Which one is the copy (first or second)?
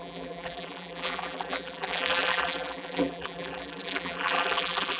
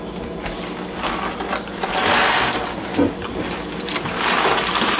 first